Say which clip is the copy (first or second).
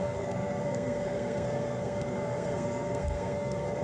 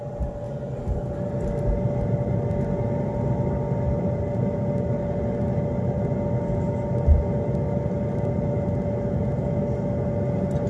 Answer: first